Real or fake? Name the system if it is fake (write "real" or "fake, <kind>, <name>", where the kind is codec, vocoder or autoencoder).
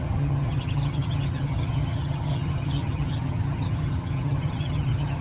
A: fake, vocoder, HiFi-GAN